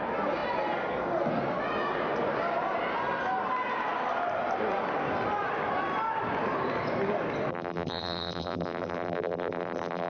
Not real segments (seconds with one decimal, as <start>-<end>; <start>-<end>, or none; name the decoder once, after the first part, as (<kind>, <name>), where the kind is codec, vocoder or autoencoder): 7.5-10.1 (vocoder, BigVGAN v2)